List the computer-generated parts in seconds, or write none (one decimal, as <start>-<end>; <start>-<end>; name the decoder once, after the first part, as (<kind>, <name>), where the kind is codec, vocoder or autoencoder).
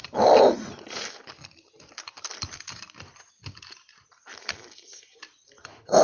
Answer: none